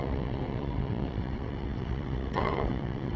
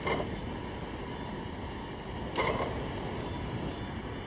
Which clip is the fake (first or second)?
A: first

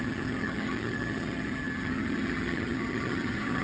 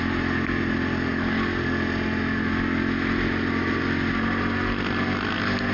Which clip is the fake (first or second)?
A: first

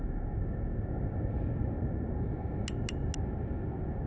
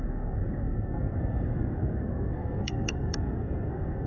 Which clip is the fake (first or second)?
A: second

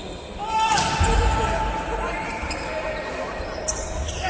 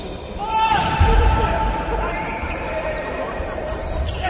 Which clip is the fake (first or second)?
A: second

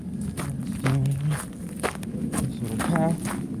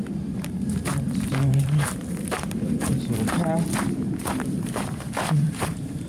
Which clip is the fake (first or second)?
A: second